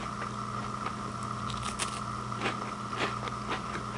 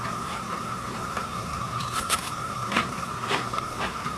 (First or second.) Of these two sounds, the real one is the first